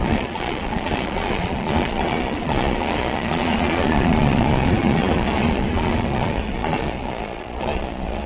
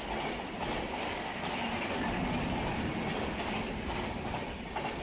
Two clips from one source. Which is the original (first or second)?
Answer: second